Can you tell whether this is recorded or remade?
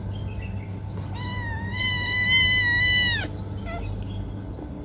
recorded